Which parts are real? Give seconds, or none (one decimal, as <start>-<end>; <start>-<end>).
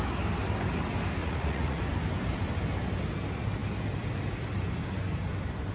0.0-1.2; 1.8-5.7